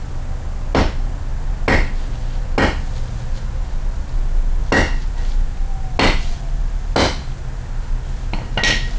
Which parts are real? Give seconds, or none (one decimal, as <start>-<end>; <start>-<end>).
0.0-9.0